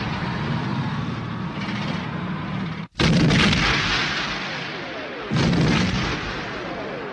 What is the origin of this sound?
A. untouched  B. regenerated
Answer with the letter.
A